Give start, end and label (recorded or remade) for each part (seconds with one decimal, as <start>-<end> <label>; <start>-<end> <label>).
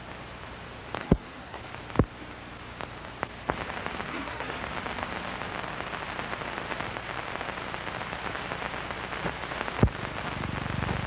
0.0-1.0 recorded; 1.0-1.6 remade; 1.6-4.1 recorded; 4.1-4.6 remade; 4.6-11.1 recorded